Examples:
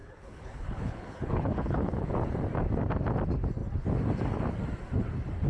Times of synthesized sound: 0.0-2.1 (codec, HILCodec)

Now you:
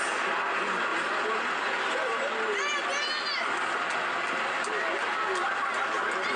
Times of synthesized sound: none

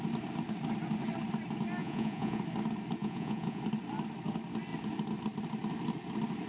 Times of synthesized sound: 1.8-2.4 (vocoder, Vocos); 3.0-3.6

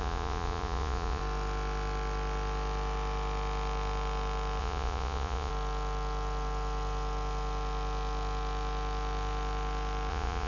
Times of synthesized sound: 0.0-1.2 (vocoder, Vocos); 4.6-5.5; 10.1-10.5

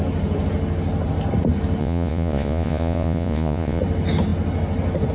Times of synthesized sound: 1.8-3.8 (vocoder, Vocos)

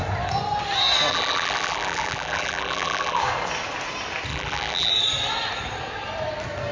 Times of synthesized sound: 1.1-3.2 (vocoder, BigVGAN v2); 4.3-4.9

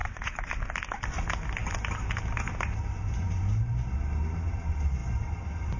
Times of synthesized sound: 0.0-0.5 (vocoder, WaveNeXt)

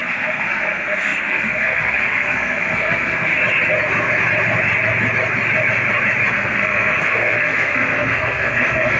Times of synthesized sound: 0.0-3.3 (codec, SNAC); 6.3-9.0